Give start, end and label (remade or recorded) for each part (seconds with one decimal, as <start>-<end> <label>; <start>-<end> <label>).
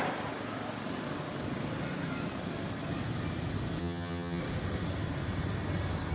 0.0-3.8 recorded; 3.8-4.4 remade; 4.4-6.1 recorded